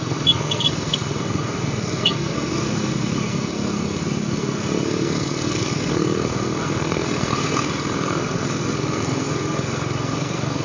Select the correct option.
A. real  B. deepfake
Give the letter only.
B